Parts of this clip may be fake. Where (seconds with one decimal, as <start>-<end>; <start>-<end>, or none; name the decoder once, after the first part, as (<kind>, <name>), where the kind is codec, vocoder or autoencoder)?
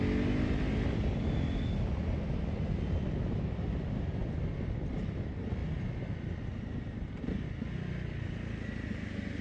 none